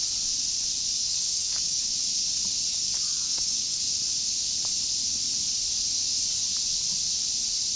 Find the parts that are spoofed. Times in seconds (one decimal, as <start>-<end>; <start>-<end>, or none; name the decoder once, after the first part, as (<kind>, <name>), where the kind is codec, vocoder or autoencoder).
1.0-1.9 (codec, DAC); 2.7-3.8